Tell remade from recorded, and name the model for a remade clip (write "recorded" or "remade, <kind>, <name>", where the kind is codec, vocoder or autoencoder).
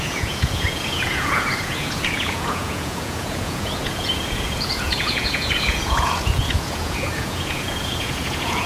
remade, vocoder, Vocos